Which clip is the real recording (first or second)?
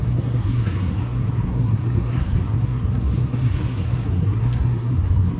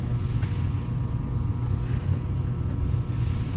second